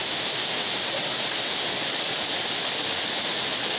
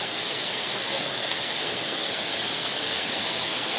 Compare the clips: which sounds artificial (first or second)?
second